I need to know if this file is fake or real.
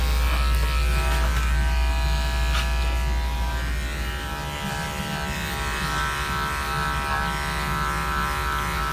real